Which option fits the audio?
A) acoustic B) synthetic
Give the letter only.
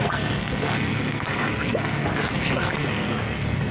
B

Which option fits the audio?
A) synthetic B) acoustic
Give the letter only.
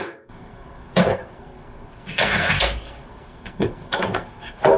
A